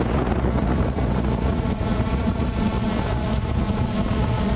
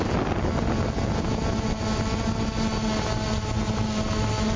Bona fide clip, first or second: second